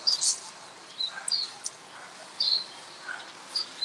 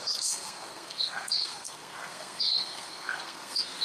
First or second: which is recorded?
first